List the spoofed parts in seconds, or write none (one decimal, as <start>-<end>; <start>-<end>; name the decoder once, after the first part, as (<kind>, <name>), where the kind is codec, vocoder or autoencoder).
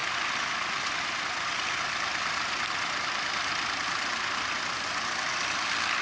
none